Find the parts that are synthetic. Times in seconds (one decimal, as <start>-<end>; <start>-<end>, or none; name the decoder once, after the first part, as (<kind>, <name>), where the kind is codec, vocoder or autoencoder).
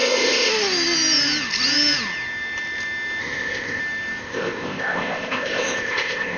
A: 0.0-0.5 (codec, ZipCodec); 3.2-3.8; 4.2-6.4